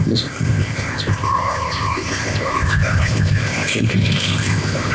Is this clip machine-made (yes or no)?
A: yes